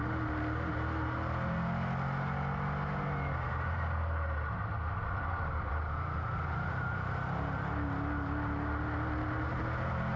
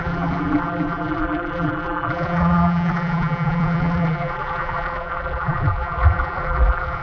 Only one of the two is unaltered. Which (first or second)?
first